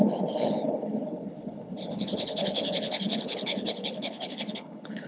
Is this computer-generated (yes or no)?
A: yes